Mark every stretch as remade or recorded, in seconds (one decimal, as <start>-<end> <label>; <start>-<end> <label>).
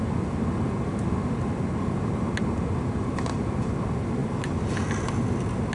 0.0-5.7 recorded